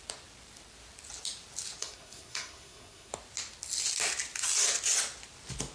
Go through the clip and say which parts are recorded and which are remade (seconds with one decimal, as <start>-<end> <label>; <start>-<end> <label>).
0.0-1.8 recorded; 1.8-3.1 remade; 3.1-5.7 recorded